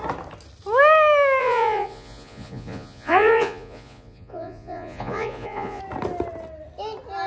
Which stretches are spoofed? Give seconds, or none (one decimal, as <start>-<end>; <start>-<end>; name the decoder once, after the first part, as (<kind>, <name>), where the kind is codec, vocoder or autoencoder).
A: 1.4-5.8 (vocoder, Vocos)